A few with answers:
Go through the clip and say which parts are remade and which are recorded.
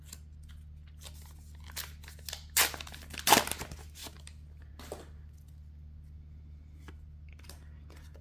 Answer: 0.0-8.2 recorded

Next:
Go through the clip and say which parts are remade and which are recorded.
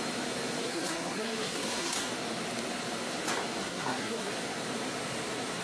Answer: 0.0-0.6 recorded; 0.6-2.1 remade; 2.1-3.6 recorded; 3.6-4.3 remade; 4.3-5.6 recorded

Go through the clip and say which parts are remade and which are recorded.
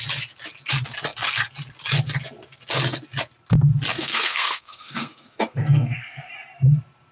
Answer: 0.0-3.9 recorded; 3.9-6.3 remade; 6.3-7.1 recorded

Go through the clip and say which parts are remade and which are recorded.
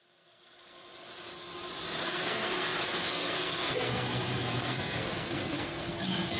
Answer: 0.0-0.8 remade; 0.8-2.0 recorded; 2.0-6.4 remade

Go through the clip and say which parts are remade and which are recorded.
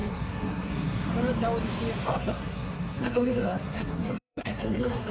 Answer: 0.0-1.1 remade; 1.1-2.0 recorded; 2.0-5.1 remade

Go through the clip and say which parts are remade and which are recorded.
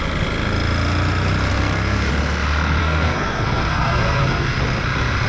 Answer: 0.0-1.5 recorded; 1.5-2.1 remade; 2.1-2.8 recorded; 2.8-4.6 remade; 4.6-5.3 recorded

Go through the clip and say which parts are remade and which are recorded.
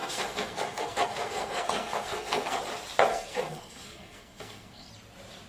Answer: 0.0-2.6 remade; 2.6-3.1 recorded; 3.1-4.9 remade; 4.9-5.5 recorded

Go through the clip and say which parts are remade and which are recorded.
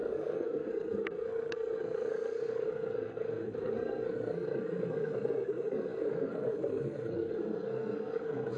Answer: 0.0-8.6 remade